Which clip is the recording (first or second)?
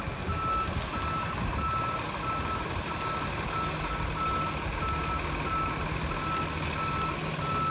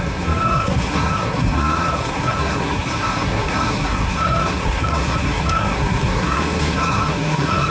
first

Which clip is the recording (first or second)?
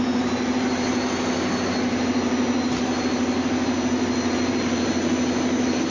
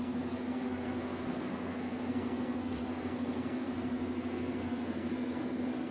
first